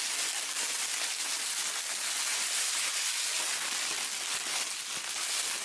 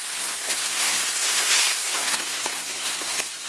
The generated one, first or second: second